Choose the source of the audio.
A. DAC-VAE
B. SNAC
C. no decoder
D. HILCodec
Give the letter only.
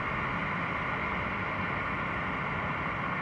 C